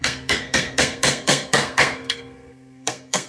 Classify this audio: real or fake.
fake